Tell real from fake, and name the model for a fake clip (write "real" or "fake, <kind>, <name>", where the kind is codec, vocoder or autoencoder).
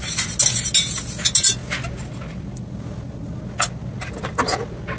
real